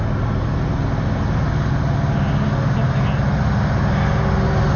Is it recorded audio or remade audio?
recorded